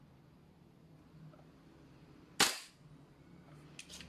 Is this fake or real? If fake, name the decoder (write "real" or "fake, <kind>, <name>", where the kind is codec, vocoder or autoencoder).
real